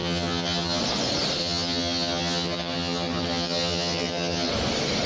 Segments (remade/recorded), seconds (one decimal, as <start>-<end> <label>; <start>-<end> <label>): 0.0-0.8 remade; 0.8-1.4 recorded; 1.4-4.5 remade; 4.5-5.1 recorded